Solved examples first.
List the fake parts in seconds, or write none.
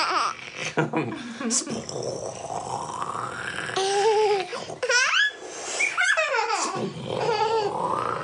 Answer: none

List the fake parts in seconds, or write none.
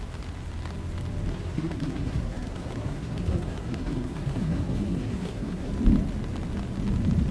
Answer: 1.3-5.7 (codec, SNAC)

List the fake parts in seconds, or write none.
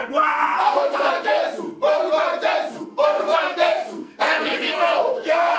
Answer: 0.0-1.4 (codec, SNAC); 2.7-5.6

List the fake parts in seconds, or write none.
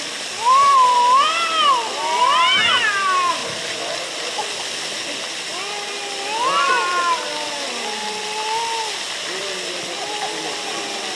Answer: none